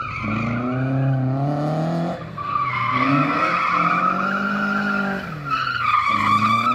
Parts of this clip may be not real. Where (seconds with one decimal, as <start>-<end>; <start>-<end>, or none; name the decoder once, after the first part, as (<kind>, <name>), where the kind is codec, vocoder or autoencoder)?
2.3-3.5 (codec, SNAC)